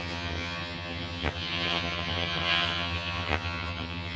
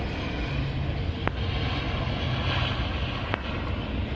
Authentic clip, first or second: second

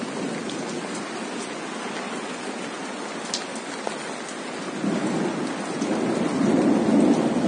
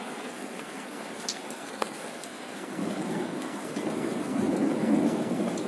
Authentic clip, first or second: first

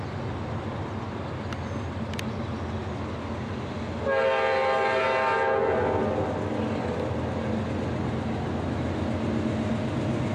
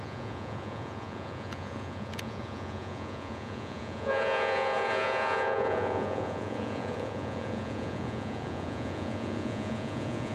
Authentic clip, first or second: first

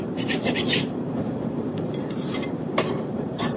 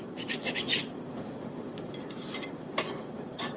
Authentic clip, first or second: second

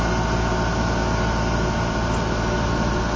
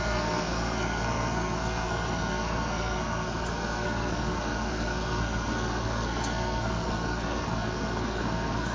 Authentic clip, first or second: first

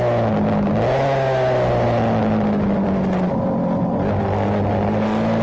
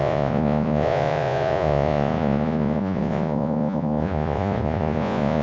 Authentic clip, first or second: first